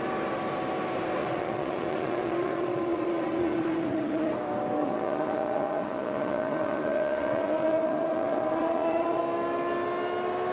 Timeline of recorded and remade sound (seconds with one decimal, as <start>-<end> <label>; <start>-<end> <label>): 0.0-1.2 recorded; 1.2-4.3 remade; 4.3-4.8 recorded; 4.8-9.2 remade; 9.2-10.5 recorded

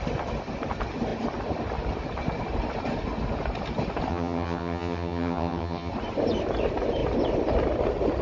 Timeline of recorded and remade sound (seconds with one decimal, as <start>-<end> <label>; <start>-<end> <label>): 0.0-4.1 recorded; 4.1-5.9 remade; 5.9-8.2 recorded

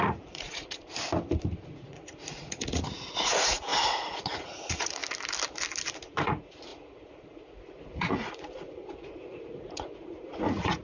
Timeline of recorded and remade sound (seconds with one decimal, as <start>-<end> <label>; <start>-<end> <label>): 0.0-0.8 remade; 0.8-1.6 recorded; 1.6-5.0 remade; 5.0-6.1 recorded; 6.1-10.8 remade

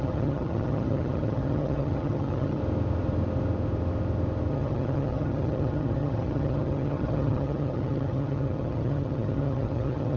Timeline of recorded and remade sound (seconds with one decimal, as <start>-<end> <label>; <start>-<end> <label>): 0.0-2.6 remade; 2.6-4.5 recorded; 4.5-10.2 remade

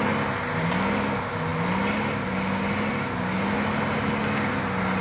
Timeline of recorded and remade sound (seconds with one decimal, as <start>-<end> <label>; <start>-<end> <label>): 0.0-5.0 recorded